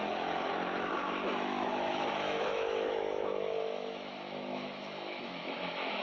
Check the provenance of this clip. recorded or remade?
remade